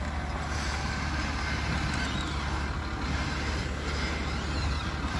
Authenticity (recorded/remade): recorded